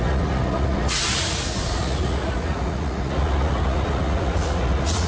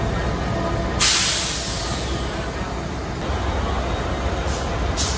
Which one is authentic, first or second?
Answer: second